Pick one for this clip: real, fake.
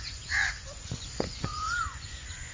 fake